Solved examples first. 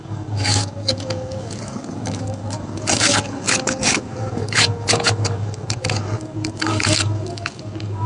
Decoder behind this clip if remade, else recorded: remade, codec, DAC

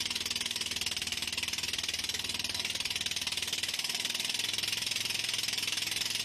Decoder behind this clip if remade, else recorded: recorded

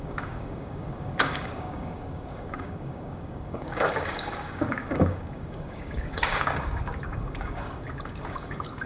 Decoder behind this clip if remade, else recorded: remade, codec, DAC